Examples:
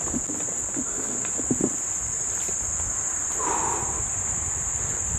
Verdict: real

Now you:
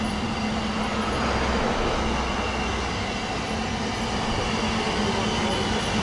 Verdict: real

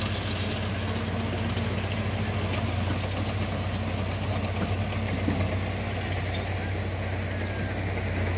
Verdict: real